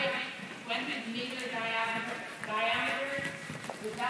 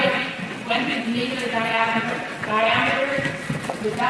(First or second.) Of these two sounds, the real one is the first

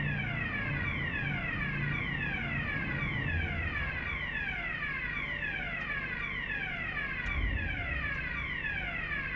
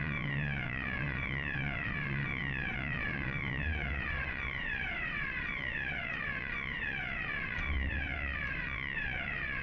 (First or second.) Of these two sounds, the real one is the first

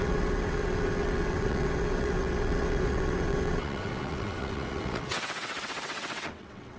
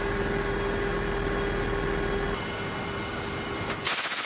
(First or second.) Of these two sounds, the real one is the second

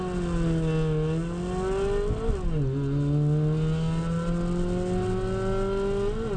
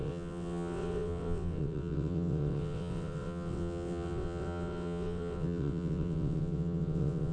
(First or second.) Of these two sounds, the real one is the first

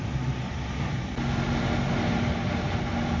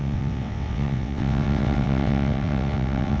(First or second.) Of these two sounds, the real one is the first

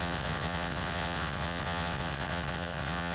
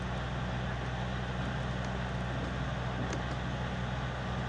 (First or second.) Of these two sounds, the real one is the second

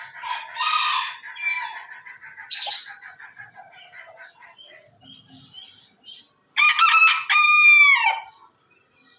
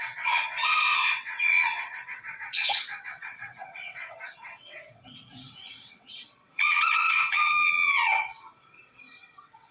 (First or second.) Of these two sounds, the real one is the first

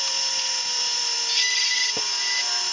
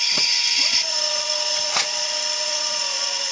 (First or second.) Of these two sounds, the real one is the first